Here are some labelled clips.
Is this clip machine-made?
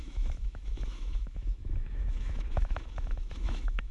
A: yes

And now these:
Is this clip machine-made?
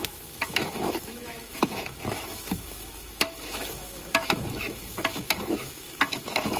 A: yes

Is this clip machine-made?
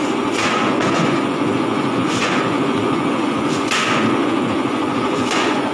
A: yes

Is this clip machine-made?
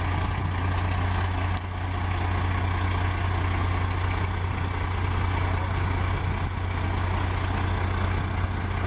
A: no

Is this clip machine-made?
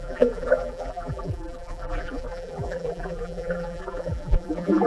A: yes